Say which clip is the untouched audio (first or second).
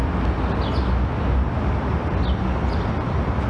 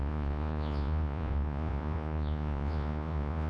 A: first